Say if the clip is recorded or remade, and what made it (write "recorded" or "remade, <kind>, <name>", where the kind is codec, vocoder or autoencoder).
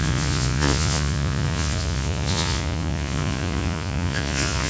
remade, vocoder, Vocos